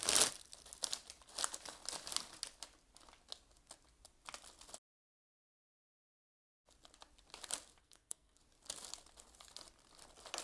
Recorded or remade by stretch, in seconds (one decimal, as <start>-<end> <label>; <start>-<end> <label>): 0.0-7.8 recorded; 7.8-8.4 remade; 8.4-10.4 recorded